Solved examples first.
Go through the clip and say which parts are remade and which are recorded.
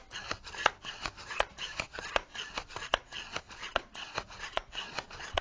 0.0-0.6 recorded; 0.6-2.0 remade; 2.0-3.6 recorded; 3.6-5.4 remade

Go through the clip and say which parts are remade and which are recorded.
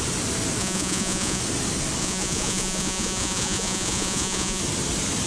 0.0-0.6 recorded; 0.6-1.4 remade; 1.4-2.0 recorded; 2.0-4.6 remade; 4.6-5.3 recorded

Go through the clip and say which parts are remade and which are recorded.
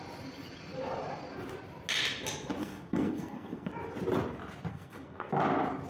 0.0-2.6 recorded; 2.6-3.7 remade; 3.7-4.7 recorded; 4.7-5.3 remade; 5.3-5.9 recorded